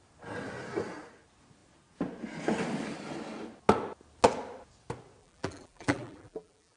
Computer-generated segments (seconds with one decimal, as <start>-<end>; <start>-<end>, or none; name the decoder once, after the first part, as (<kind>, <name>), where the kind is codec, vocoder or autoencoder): 5.2-6.8 (vocoder, BigVGAN v2)